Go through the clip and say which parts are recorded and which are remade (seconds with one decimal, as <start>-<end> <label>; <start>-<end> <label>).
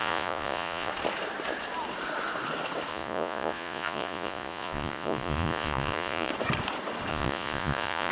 0.0-0.9 remade; 0.9-2.9 recorded; 2.9-6.3 remade; 6.3-7.1 recorded; 7.1-8.1 remade